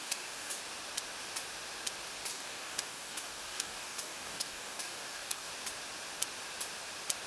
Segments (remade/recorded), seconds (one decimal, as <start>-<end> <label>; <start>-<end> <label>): 0.0-0.6 remade; 0.6-2.3 recorded; 2.3-5.5 remade; 5.5-7.3 recorded